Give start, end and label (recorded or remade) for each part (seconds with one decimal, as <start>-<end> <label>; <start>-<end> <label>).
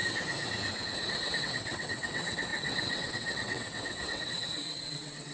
0.0-1.4 recorded; 1.4-5.3 remade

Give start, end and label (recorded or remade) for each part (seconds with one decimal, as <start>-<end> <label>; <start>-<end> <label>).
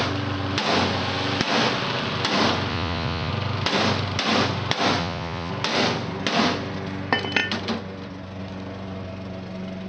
0.0-2.7 recorded; 2.7-3.3 remade; 3.3-5.0 recorded; 5.0-5.5 remade; 5.5-9.9 recorded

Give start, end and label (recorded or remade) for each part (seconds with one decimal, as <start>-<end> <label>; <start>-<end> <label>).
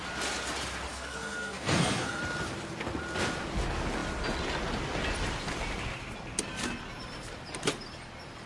0.0-0.9 recorded; 0.9-2.2 remade; 2.2-8.5 recorded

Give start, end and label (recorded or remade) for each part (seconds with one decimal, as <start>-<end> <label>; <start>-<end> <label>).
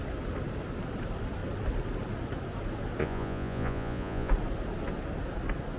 0.0-3.0 recorded; 3.0-4.3 remade; 4.3-5.8 recorded